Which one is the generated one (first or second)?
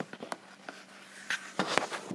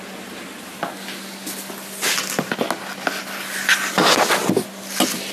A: first